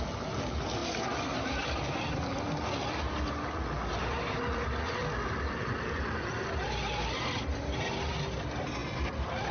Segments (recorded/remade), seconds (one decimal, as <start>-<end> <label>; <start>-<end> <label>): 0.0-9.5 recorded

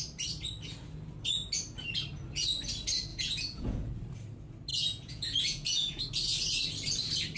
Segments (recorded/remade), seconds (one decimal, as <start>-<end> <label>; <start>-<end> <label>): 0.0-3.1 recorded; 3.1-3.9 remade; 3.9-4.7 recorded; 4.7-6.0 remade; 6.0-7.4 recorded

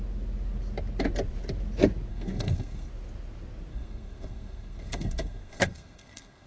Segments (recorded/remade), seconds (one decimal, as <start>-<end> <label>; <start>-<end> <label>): 0.0-2.1 recorded; 2.1-2.9 remade; 2.9-3.7 recorded; 3.7-6.5 remade

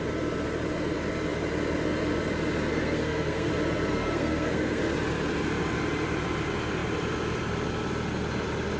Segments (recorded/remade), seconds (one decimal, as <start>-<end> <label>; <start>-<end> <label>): 0.0-2.7 recorded; 2.7-3.5 remade; 3.5-3.9 recorded; 3.9-4.8 remade; 4.8-8.8 recorded